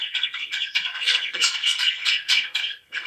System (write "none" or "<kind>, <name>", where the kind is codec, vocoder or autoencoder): codec, SNAC